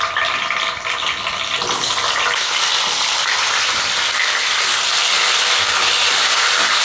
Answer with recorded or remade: recorded